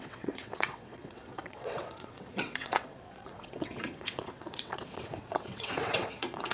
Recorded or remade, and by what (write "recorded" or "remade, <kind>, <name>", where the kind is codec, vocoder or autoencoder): remade, vocoder, WaveNeXt